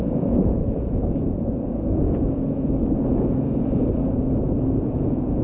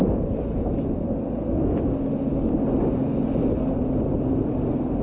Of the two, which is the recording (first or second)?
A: second